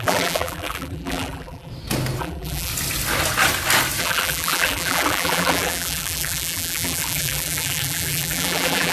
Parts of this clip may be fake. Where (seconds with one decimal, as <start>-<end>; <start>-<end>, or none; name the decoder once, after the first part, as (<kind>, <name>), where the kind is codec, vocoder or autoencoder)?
0.0-1.7 (vocoder, BigVGAN v2); 2.2-2.7; 4.0-8.9